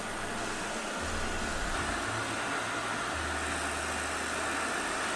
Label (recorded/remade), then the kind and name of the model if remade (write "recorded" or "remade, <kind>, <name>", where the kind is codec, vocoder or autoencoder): recorded